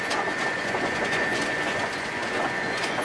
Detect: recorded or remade remade